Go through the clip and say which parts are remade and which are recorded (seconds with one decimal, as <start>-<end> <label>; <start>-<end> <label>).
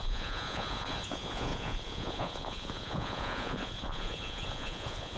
0.0-5.2 remade